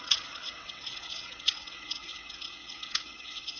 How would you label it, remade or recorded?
remade